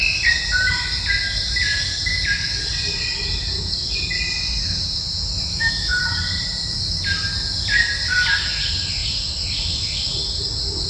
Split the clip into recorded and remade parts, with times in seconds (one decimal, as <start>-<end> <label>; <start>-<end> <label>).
0.0-5.5 recorded; 5.5-6.0 remade; 6.0-10.9 recorded